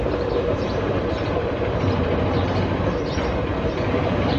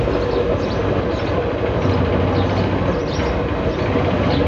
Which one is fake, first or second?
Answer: first